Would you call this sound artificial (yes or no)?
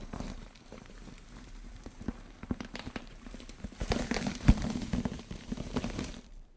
yes